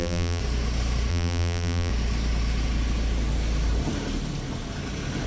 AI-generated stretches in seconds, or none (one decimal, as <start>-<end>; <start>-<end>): 0.0-0.4; 1.1-1.9